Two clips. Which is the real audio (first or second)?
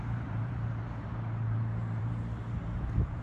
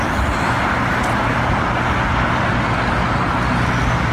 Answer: second